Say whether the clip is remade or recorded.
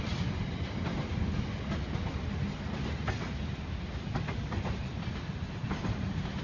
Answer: recorded